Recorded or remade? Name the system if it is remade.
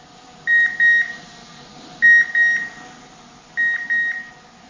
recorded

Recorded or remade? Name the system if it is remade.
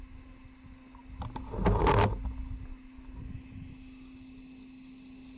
recorded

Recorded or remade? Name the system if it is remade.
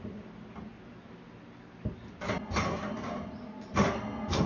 recorded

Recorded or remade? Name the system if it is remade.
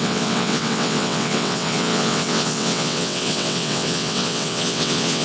remade, vocoder, WaveNeXt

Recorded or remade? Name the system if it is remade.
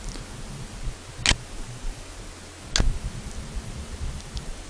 recorded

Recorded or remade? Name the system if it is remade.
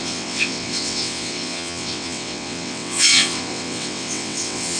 remade, vocoder, WaveNeXt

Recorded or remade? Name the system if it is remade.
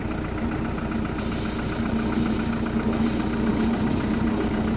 recorded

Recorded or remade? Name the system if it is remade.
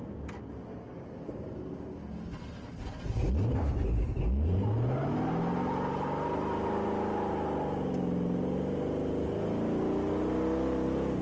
recorded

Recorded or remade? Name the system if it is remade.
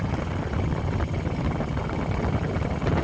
recorded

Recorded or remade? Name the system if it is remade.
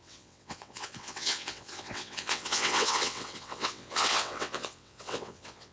remade, vocoder, WaveNeXt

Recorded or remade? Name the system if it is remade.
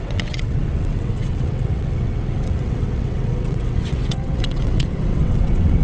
remade, vocoder, WaveNeXt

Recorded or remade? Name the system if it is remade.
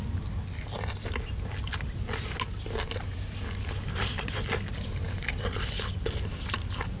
recorded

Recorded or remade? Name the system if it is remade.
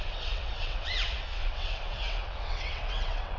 remade, vocoder, WaveNeXt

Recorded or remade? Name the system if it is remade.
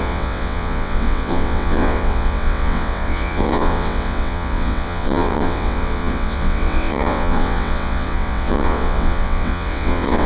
remade, vocoder, WaveNeXt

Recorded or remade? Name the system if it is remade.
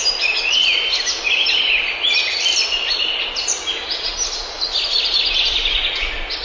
recorded